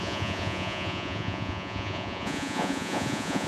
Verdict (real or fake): fake